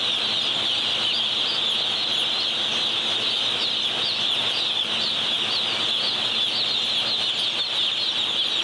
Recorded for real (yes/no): yes